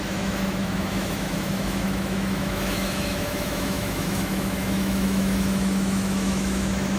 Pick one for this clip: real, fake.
fake